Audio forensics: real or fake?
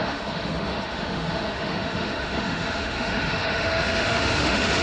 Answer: fake